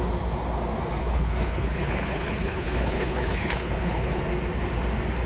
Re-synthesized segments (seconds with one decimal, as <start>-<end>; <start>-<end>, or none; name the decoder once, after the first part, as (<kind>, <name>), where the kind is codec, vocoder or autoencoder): 1.0-4.2 (codec, HILCodec)